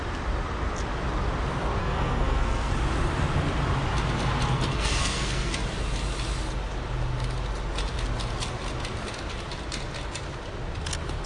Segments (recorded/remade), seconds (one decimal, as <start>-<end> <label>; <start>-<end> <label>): 0.0-1.8 recorded; 1.8-2.7 remade; 2.7-4.5 recorded; 4.5-5.6 remade; 5.6-11.3 recorded